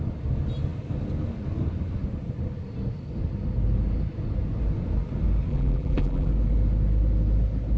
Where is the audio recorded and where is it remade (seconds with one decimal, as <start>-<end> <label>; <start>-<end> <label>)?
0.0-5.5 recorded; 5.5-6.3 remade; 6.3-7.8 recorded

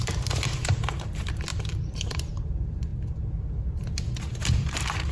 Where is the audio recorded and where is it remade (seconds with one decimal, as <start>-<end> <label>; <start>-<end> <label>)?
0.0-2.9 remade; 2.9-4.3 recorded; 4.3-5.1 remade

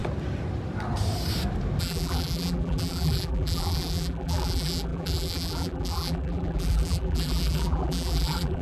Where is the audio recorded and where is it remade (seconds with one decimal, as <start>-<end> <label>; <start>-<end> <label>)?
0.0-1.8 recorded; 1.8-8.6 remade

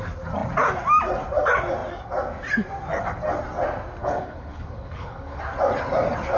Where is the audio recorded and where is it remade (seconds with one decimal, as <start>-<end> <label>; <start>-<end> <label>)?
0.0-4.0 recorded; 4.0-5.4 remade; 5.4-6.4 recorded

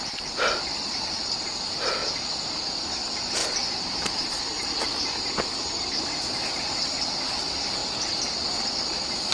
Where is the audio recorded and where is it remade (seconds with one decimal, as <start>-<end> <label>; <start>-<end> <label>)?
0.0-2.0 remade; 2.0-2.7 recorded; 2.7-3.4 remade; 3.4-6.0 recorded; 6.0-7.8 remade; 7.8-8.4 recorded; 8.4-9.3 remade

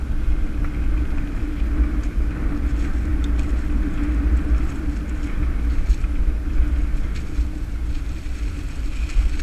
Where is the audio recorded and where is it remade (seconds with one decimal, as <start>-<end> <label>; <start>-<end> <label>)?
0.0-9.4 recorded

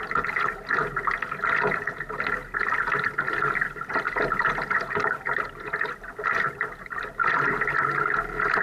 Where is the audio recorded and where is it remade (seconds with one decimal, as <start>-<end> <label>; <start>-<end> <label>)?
0.0-8.6 recorded